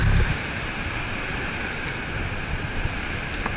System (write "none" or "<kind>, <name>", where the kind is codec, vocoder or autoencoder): none